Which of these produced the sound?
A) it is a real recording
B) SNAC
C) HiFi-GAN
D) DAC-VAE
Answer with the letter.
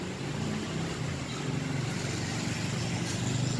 A